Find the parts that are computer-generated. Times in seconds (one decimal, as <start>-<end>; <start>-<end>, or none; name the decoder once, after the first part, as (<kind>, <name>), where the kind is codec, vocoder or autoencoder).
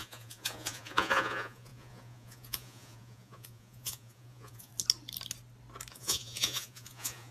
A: 0.0-4.7 (vocoder, Vocos); 5.9-7.3